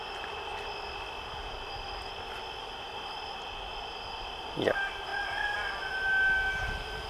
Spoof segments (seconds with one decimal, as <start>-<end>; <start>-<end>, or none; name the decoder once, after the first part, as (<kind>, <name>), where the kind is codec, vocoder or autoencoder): none